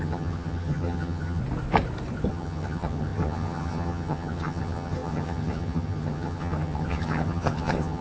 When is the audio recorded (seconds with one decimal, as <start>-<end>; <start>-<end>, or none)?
1.4-2.3